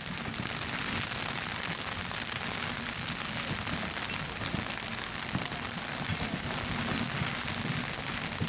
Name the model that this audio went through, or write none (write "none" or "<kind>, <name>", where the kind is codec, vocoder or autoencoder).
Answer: none